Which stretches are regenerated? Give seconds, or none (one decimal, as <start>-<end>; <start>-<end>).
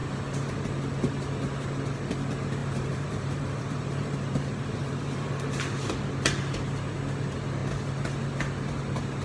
2.6-5.3